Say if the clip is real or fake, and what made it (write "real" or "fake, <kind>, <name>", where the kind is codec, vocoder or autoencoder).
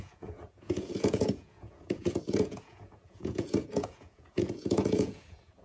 fake, vocoder, Vocos